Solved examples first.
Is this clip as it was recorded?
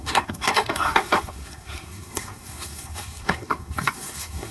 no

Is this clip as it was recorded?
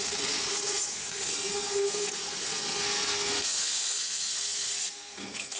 no